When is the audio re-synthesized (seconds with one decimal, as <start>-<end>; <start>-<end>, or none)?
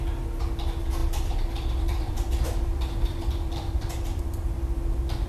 1.0-4.2